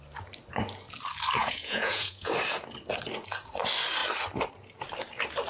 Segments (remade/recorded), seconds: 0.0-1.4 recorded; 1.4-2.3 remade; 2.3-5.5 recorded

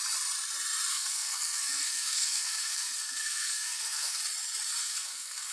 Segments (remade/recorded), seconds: 0.0-0.9 recorded; 0.9-4.2 remade; 4.2-4.8 recorded; 4.8-5.5 remade

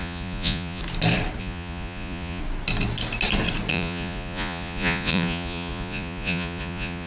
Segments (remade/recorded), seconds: 0.0-0.8 remade; 0.8-1.4 recorded; 1.4-2.4 remade; 2.4-3.7 recorded; 3.7-7.1 remade